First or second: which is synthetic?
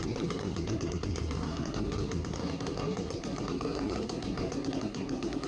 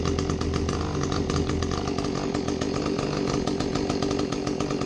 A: first